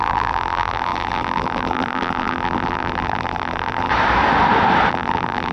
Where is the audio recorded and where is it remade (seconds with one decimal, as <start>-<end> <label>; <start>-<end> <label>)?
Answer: 0.0-3.9 remade; 3.9-4.9 recorded; 4.9-5.5 remade